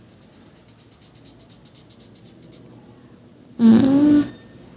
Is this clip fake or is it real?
real